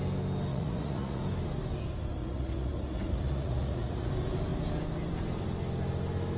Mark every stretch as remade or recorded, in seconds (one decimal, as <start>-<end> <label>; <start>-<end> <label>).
0.0-0.5 recorded; 0.5-1.2 remade; 1.2-2.2 recorded; 2.2-4.1 remade; 4.1-6.4 recorded